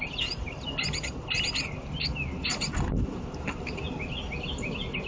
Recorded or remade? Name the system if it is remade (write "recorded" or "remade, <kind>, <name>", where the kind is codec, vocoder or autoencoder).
recorded